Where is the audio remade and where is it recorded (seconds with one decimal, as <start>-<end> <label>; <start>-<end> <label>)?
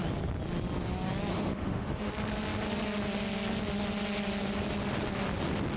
0.0-1.3 recorded; 1.3-2.1 remade; 2.1-5.8 recorded